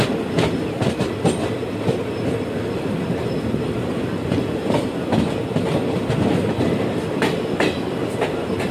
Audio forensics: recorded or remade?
recorded